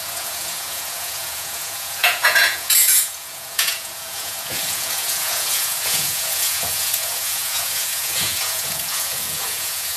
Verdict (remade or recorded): remade